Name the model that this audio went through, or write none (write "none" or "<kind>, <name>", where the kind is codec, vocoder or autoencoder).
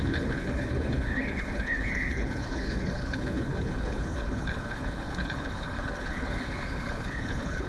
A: codec, HILCodec